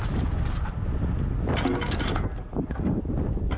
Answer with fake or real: real